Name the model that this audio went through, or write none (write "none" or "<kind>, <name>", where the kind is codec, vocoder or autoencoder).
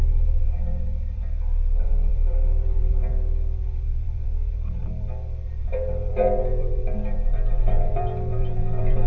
vocoder, BigVGAN v2